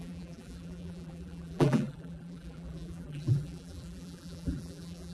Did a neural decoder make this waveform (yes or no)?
yes